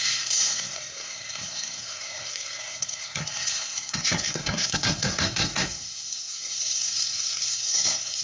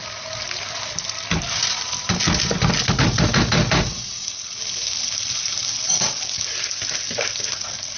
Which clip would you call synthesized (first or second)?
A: first